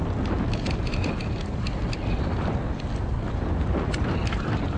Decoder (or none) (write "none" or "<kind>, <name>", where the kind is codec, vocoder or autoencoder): none